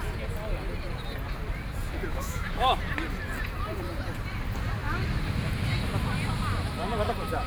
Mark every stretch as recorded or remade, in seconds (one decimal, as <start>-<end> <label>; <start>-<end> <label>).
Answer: 0.0-2.1 recorded; 2.1-2.8 remade; 2.8-7.5 recorded